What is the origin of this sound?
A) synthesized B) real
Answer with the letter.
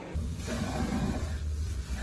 A